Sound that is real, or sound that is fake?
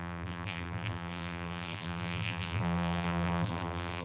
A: fake